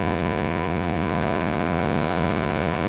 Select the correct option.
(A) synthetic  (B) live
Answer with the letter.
A